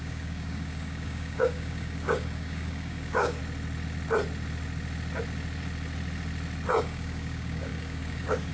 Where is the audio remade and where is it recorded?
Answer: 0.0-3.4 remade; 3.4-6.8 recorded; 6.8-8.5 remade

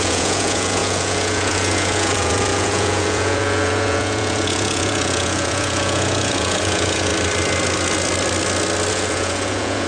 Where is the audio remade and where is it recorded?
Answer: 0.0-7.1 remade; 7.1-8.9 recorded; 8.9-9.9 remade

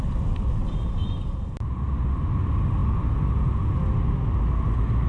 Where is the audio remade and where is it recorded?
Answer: 0.0-0.6 recorded; 0.6-1.8 remade; 1.8-5.1 recorded

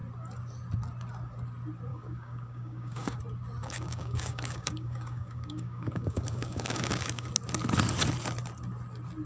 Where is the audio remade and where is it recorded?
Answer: 0.0-1.9 recorded; 1.9-3.2 remade; 3.2-3.6 recorded; 3.6-7.3 remade; 7.3-9.3 recorded

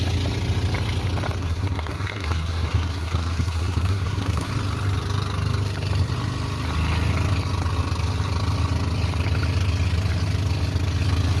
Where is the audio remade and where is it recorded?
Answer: 0.0-1.4 recorded; 1.4-4.5 remade; 4.5-11.4 recorded